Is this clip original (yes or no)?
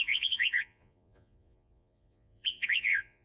no